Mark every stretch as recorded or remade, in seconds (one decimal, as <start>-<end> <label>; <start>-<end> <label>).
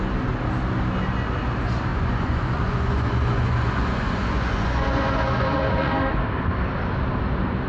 0.0-1.9 recorded; 1.9-5.9 remade; 5.9-7.7 recorded